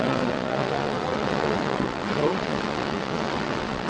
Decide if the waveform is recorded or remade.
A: remade